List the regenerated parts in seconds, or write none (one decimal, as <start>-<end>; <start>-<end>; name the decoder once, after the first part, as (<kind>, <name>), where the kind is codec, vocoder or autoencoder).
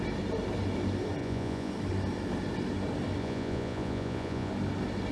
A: 1.2-1.7 (vocoder, Vocos); 3.2-4.5